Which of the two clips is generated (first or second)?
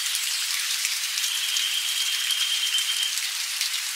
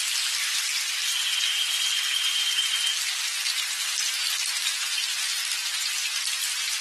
first